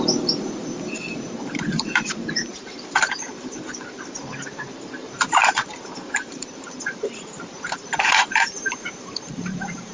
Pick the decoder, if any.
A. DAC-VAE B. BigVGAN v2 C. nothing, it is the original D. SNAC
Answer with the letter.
B